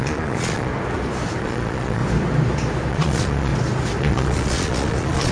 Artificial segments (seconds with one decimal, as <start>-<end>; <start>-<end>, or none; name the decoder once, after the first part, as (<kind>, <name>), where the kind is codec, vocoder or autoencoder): 0.0-0.7 (vocoder, Vocos); 1.4-2.0; 2.9-3.5; 4.0-5.3